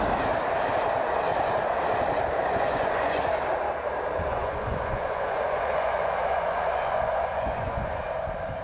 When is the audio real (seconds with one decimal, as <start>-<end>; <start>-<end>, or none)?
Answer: 0.0-2.4; 3.3-4.3; 8.0-8.6